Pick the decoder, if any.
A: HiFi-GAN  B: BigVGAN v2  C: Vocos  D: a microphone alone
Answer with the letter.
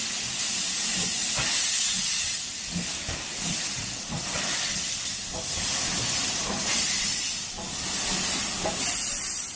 D